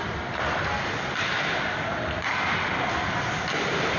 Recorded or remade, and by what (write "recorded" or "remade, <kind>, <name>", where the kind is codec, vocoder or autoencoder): recorded